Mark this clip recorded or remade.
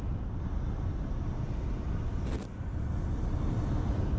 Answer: recorded